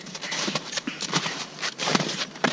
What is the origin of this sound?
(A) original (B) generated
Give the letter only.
B